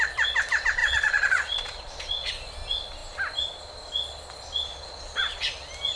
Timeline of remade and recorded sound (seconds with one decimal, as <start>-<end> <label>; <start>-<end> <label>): 0.0-0.8 recorded; 0.8-2.3 remade; 2.3-4.7 recorded; 4.7-5.5 remade; 5.5-6.0 recorded